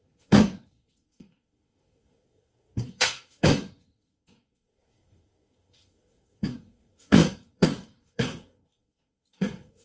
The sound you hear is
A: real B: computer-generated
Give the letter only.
B